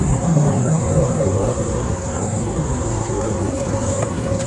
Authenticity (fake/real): fake